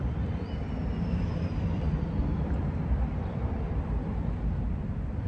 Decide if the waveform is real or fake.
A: fake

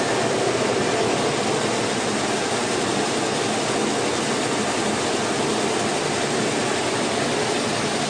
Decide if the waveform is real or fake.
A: real